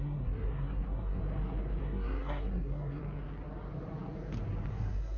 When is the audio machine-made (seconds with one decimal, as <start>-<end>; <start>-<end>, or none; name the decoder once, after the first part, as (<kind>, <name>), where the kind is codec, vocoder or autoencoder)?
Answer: 0.0-1.2 (codec, SNAC); 1.8-3.0; 4.7-5.2